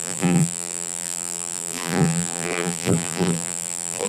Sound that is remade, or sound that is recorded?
remade